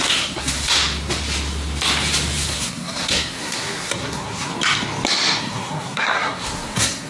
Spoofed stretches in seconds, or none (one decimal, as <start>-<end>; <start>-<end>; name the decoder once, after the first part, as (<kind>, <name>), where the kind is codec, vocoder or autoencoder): 0.0-0.8 (codec, SNAC); 2.4-4.5; 5.4-7.1